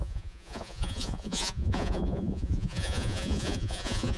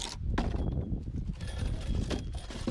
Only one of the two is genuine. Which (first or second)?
second